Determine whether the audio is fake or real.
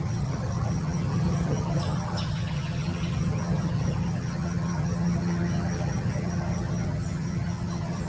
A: fake